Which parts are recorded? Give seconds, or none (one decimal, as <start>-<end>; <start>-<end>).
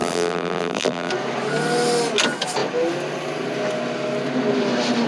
1.1-5.1